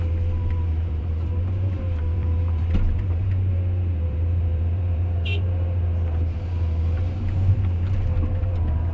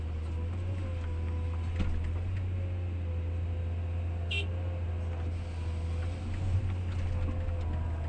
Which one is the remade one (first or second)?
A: first